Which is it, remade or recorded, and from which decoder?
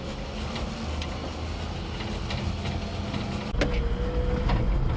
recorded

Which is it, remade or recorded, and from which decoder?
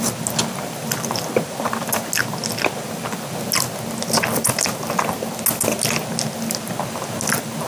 recorded